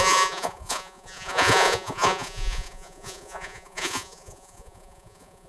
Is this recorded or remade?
remade